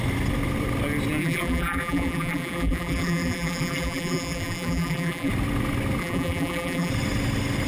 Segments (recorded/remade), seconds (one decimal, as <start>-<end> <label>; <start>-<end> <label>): 0.0-1.2 recorded; 1.2-5.3 remade; 5.3-6.0 recorded; 6.0-6.9 remade; 6.9-7.7 recorded